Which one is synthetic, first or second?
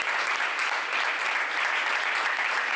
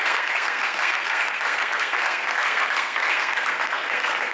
second